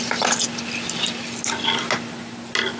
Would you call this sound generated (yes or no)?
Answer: no